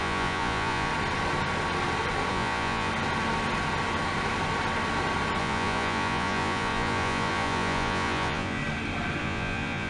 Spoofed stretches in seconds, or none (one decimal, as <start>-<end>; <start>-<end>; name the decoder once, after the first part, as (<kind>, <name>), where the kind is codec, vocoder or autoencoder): 0.0-0.9 (vocoder, Vocos); 2.3-2.9; 5.4-8.6; 9.2-9.9